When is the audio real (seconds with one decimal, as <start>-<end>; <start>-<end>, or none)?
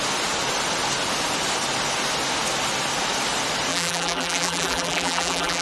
0.0-3.7